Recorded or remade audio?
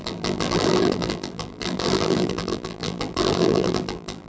remade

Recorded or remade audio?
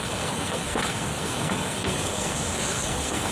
remade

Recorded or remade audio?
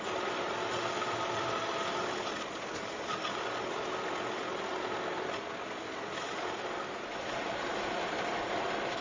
recorded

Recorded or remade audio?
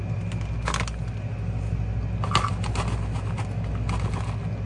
recorded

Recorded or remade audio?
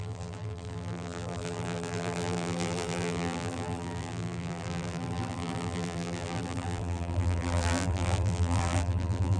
remade